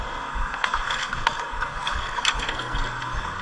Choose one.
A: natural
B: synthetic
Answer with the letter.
B